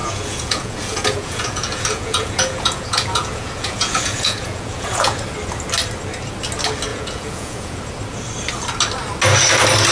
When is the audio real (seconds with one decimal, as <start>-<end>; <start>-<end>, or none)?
5.2-6.9; 7.8-9.9